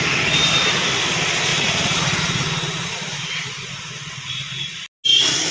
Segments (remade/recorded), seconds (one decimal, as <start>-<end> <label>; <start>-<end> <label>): 0.0-1.5 recorded; 1.5-4.8 remade; 4.8-5.5 recorded